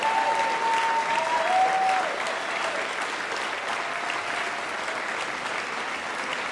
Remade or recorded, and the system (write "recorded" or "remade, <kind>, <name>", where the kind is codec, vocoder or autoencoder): recorded